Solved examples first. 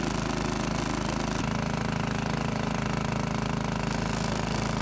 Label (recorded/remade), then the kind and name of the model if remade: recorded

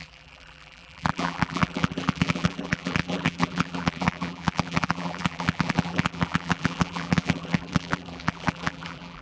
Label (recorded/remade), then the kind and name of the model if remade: remade, vocoder, BigVGAN v2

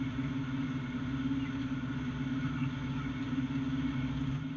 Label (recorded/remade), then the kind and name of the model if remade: recorded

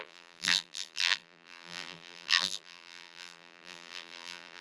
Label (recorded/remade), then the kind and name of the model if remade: remade, vocoder, BigVGAN v2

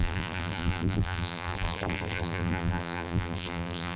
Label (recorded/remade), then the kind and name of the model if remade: remade, vocoder, BigVGAN v2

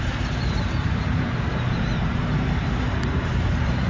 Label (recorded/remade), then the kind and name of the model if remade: remade, vocoder, BigVGAN v2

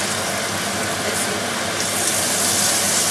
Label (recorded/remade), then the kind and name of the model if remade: recorded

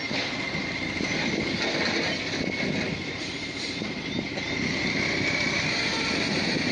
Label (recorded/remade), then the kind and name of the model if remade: remade, vocoder, BigVGAN v2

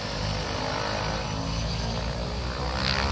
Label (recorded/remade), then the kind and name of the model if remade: recorded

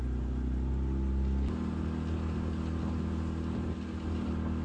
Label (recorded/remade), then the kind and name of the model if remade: recorded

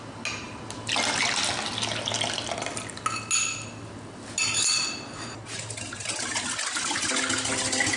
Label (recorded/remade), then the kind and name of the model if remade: recorded